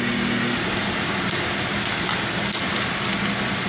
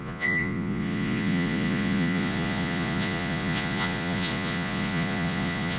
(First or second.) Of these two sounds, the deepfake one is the second